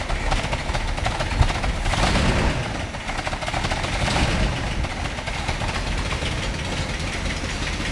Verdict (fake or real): fake